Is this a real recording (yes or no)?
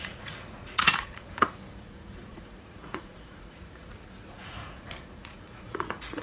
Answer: no